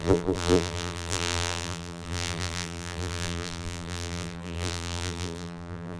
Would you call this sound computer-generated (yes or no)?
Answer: yes